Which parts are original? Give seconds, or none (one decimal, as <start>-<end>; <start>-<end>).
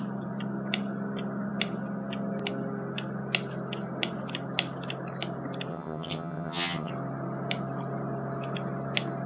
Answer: 0.0-5.7; 6.9-9.3